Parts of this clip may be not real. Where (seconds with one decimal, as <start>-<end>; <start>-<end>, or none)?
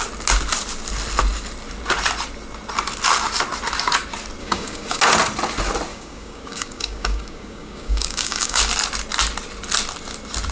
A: 4.4-5.0; 5.9-8.6